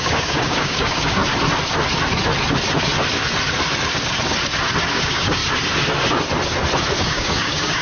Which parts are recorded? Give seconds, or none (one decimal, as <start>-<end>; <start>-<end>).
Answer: 1.2-4.9; 5.4-7.0